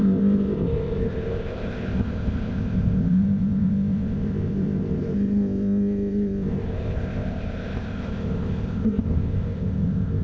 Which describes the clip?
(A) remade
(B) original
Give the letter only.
A